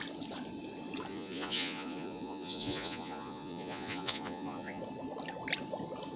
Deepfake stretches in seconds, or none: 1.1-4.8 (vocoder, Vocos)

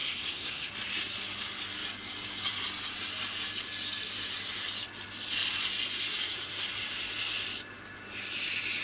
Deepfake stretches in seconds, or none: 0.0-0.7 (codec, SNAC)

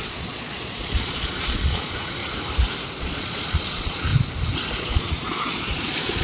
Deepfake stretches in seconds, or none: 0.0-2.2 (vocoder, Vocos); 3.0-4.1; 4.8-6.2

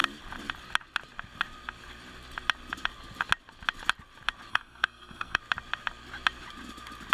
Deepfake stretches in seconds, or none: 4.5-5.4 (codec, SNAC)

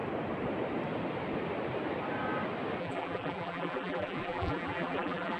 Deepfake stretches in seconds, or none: 2.8-5.4 (vocoder, BigVGAN v2)